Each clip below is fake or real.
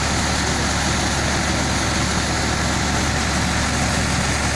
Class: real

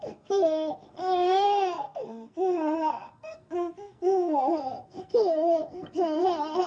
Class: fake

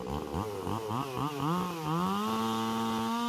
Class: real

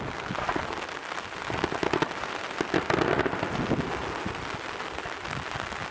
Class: real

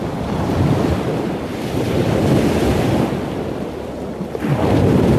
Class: real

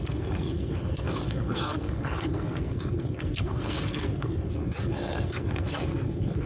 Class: fake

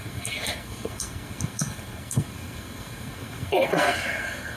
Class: fake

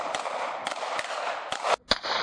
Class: real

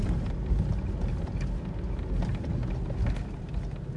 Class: real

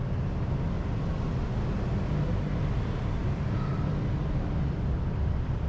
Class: real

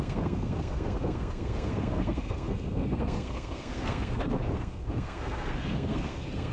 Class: fake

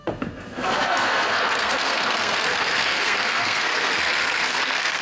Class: fake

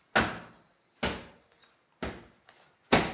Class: real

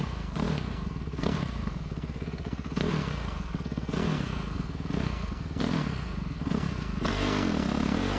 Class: fake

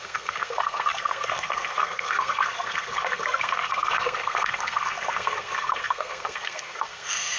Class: fake